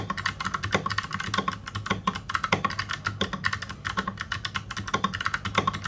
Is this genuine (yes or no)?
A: yes